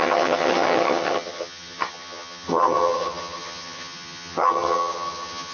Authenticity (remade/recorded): remade